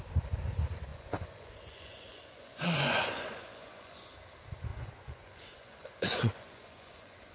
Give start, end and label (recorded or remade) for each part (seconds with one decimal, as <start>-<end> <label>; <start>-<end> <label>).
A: 0.0-0.9 recorded; 0.9-4.1 remade; 4.1-4.7 recorded; 4.7-7.3 remade